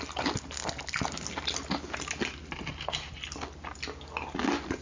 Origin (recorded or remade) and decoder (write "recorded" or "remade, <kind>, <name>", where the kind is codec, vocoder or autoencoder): recorded